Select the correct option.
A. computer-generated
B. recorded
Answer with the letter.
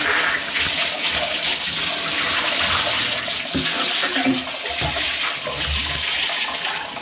B